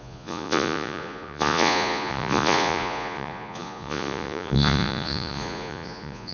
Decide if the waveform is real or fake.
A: fake